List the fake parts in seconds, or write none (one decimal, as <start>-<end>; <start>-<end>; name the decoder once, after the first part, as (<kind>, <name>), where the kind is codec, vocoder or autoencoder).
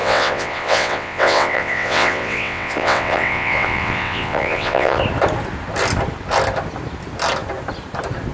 0.0-5.0 (vocoder, WaveNeXt)